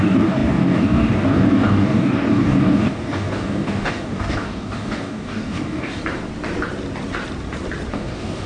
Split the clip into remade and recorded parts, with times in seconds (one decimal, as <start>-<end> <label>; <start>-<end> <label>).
0.0-6.0 remade; 6.0-7.9 recorded; 7.9-8.5 remade